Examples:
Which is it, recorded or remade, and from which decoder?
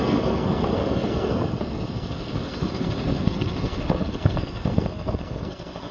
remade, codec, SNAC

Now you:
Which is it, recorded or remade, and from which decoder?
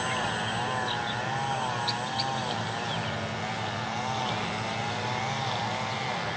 recorded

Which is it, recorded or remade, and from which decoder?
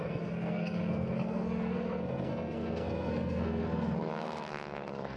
remade, codec, SNAC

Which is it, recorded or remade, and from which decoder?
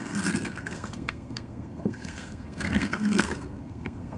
remade, codec, SNAC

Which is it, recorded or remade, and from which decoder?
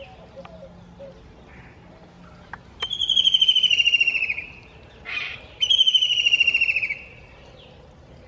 recorded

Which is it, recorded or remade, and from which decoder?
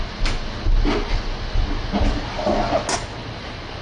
recorded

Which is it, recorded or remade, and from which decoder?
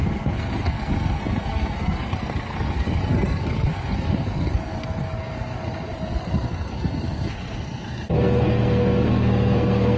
remade, codec, SNAC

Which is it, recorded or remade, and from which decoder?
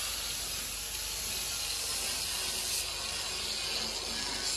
recorded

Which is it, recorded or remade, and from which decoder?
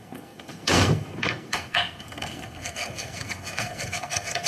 remade, codec, SNAC